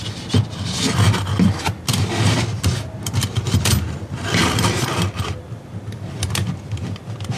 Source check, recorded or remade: recorded